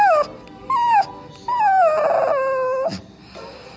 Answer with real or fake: real